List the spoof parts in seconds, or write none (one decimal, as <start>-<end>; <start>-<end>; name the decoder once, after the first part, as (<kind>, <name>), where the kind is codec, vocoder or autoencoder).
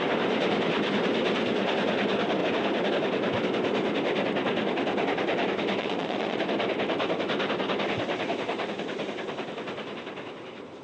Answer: 5.8-6.4 (vocoder, Vocos)